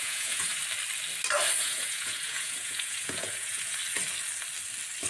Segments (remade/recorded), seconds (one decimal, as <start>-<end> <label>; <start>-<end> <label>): 0.0-0.6 remade; 0.6-1.6 recorded; 1.6-3.8 remade; 3.8-5.1 recorded